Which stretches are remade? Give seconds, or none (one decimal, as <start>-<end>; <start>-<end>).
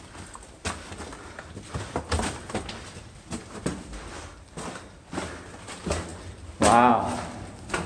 none